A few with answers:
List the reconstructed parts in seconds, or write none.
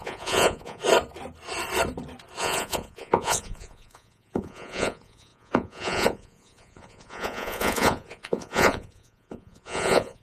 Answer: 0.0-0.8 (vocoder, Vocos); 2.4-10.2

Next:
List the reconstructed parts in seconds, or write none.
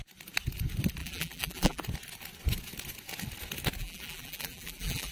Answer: 1.0-1.8 (vocoder, BigVGAN v2); 3.8-5.1